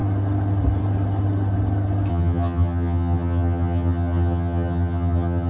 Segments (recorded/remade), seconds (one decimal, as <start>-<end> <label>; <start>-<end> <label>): 0.0-2.1 recorded; 2.1-5.5 remade